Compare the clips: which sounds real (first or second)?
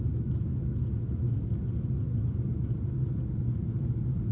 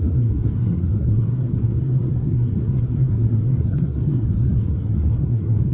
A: first